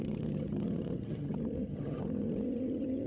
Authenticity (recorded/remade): remade